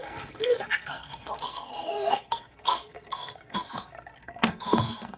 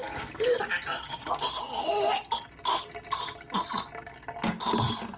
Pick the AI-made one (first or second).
first